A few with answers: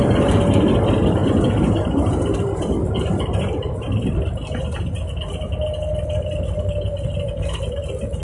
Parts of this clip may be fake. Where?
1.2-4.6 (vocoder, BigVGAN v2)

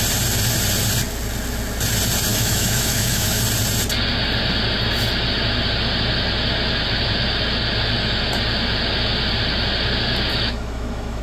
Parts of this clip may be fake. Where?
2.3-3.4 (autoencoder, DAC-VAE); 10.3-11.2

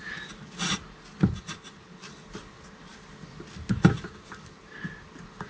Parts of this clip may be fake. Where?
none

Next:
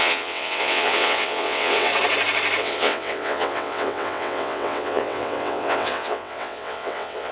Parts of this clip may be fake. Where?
0.0-1.9 (vocoder, WaveNeXt); 2.6-7.3